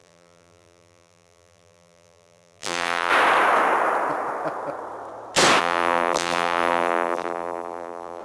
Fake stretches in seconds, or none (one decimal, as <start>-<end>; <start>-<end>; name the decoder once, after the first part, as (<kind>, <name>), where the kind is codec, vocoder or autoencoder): 0.0-3.1 (vocoder, BigVGAN v2); 5.6-8.2